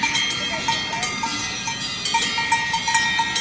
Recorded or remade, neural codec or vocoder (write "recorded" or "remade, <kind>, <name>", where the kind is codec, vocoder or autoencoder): recorded